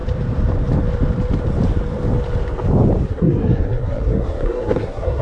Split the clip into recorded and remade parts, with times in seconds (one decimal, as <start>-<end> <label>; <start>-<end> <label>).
0.0-3.1 recorded; 3.1-5.2 remade